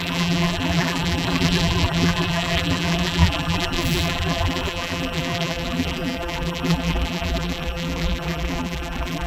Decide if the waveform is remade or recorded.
remade